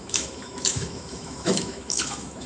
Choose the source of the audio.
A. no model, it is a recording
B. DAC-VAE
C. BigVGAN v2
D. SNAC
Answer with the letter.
B